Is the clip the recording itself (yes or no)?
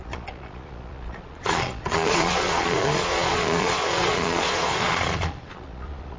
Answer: no